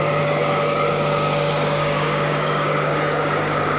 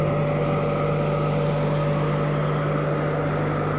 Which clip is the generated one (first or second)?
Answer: first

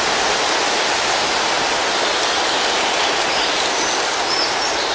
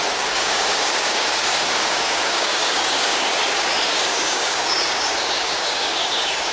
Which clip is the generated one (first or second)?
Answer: second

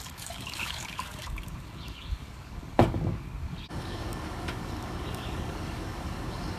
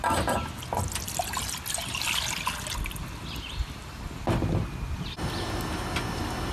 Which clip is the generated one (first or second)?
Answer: first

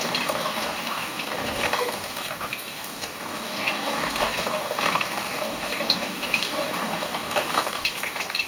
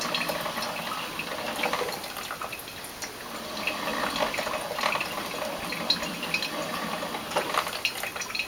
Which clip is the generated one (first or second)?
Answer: first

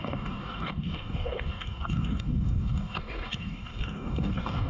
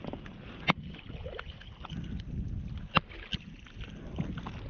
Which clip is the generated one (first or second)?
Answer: first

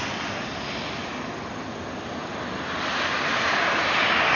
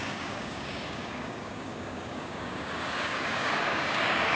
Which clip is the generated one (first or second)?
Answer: second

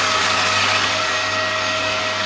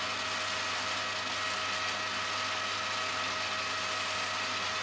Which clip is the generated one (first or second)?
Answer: first